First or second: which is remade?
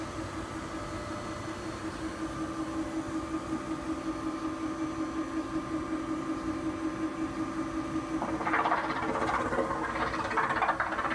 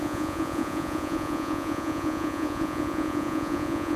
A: second